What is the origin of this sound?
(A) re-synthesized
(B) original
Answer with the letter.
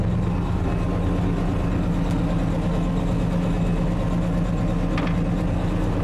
B